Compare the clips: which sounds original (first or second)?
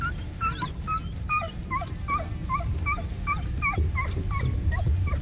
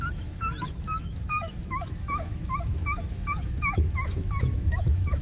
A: first